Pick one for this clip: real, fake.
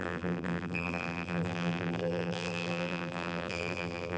fake